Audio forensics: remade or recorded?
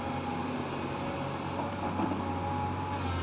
recorded